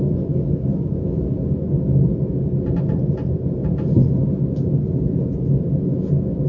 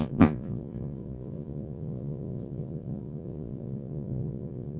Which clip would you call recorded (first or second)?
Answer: first